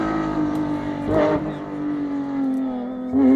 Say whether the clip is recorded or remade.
recorded